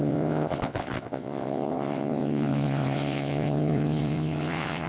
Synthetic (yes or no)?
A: yes